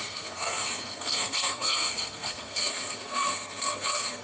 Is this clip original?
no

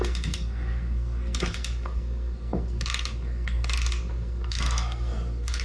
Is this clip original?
no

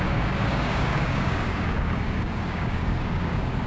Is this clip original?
no